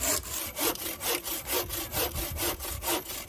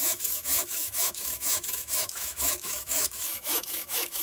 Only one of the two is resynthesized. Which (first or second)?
second